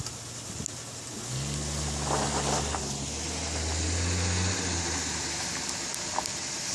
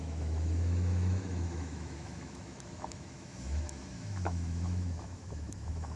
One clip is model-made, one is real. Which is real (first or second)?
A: first